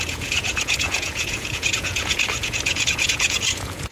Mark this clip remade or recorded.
remade